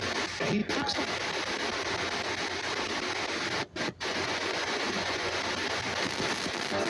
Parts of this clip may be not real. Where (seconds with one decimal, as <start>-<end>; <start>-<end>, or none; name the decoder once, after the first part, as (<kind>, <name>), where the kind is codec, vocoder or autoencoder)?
4.1-5.4 (vocoder, Vocos)